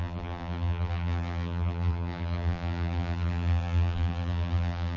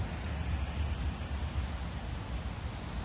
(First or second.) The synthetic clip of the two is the first